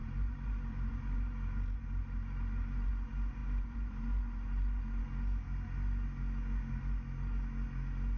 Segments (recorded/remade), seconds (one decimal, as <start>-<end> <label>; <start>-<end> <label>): 0.0-2.9 remade; 2.9-3.4 recorded; 3.4-5.0 remade; 5.0-8.2 recorded